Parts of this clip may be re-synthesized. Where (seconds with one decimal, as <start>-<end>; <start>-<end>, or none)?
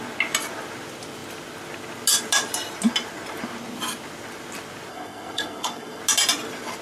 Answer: 4.9-6.0